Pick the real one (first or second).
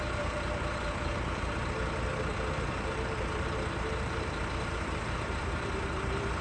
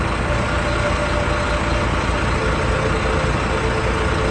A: second